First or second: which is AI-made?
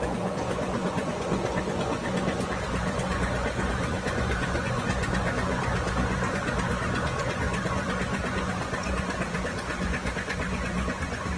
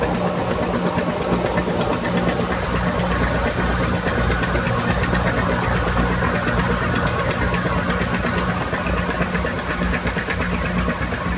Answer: first